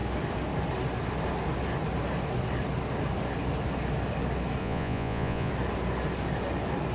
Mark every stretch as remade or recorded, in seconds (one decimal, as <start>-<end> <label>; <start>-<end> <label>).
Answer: 0.0-4.6 recorded; 4.6-5.5 remade; 5.5-6.9 recorded

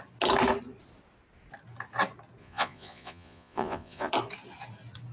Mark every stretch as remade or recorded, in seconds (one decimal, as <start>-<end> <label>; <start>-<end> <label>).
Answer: 0.0-2.4 recorded; 2.4-4.1 remade; 4.1-5.1 recorded

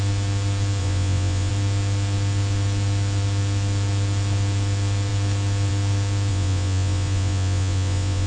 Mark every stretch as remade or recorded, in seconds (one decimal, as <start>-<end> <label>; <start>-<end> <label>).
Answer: 0.0-0.8 recorded; 0.8-1.5 remade; 1.5-6.3 recorded; 6.3-8.3 remade

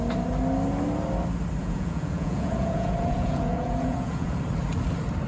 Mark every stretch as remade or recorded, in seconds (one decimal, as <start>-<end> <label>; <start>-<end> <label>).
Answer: 0.0-1.6 recorded; 1.6-4.4 remade; 4.4-5.3 recorded

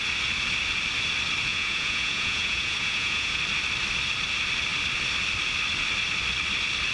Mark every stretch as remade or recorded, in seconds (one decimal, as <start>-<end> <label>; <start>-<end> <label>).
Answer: 0.0-1.5 recorded; 1.5-3.4 remade; 3.4-6.9 recorded